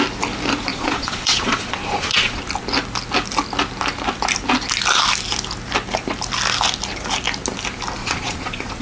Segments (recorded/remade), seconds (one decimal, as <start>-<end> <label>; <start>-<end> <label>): 0.0-0.7 recorded; 0.7-2.4 remade; 2.4-8.0 recorded; 8.0-8.8 remade